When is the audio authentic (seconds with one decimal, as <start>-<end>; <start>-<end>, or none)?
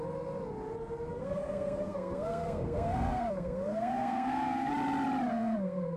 0.0-1.1; 4.7-5.3